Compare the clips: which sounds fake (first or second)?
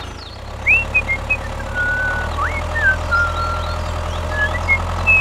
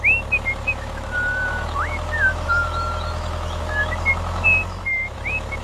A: second